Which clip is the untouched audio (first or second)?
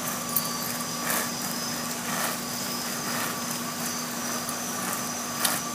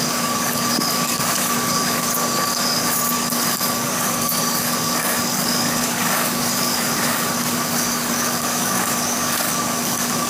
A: first